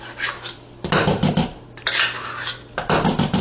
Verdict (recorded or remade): recorded